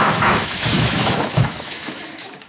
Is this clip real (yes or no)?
no